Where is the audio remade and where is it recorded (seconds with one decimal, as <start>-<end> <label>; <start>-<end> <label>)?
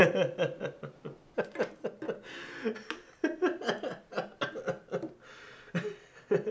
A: 0.0-0.8 remade; 0.8-6.5 recorded